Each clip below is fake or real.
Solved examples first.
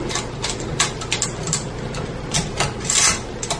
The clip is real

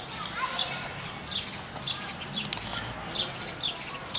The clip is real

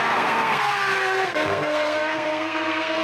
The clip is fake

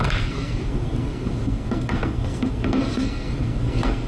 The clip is fake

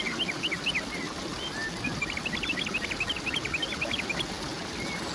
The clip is real